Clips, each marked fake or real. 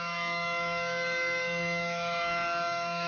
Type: fake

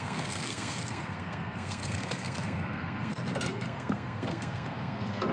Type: fake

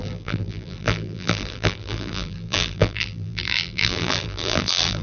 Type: fake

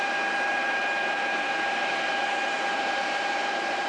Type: fake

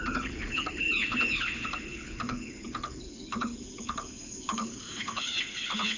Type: fake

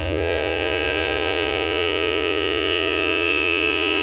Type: fake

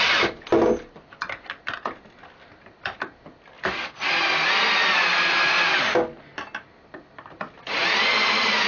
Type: real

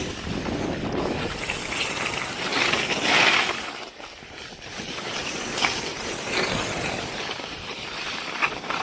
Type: fake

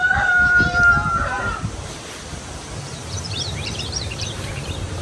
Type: fake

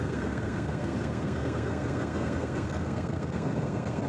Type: fake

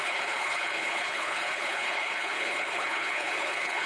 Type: fake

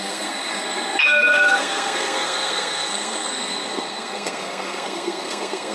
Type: fake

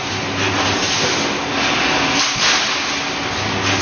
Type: real